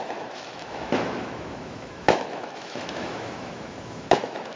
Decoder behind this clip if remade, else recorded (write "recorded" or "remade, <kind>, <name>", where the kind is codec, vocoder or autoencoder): remade, autoencoder, DAC-VAE